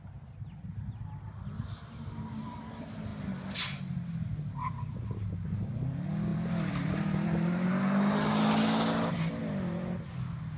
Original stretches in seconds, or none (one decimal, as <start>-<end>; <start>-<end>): 0.0-6.3; 7.7-10.6